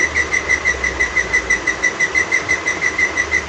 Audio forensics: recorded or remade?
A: remade